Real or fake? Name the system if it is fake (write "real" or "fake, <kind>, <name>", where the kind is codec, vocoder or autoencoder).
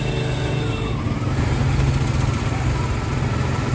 real